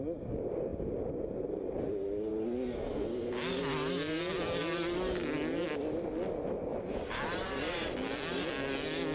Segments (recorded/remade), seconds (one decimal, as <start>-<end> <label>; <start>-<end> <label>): 0.0-9.1 recorded